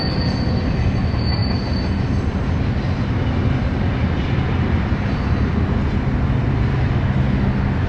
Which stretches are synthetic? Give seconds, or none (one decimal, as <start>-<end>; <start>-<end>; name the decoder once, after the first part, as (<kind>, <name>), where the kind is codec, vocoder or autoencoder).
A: none